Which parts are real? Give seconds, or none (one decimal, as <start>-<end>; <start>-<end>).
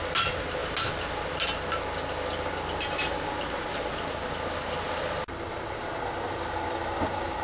0.0-7.4